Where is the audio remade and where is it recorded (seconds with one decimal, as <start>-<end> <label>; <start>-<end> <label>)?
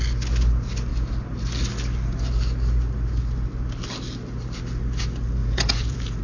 0.0-5.4 recorded; 5.4-6.2 remade